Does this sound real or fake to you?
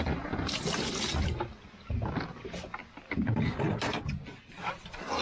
real